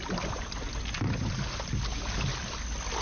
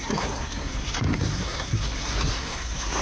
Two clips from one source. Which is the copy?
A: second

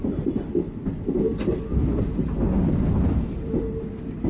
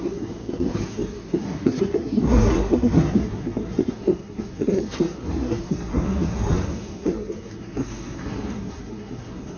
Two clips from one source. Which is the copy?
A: second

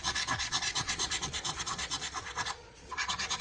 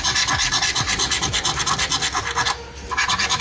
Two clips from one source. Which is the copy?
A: first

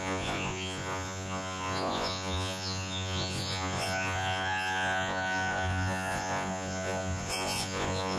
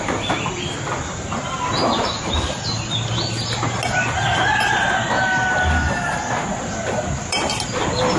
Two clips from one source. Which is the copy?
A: first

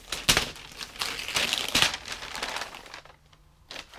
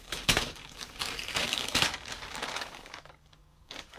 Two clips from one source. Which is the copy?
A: second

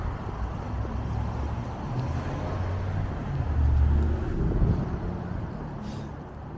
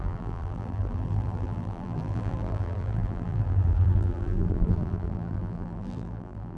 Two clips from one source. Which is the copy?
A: second